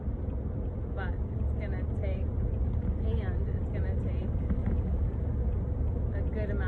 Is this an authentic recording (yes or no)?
yes